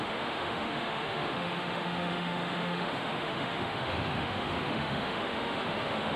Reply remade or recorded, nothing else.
remade